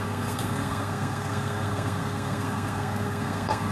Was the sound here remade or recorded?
remade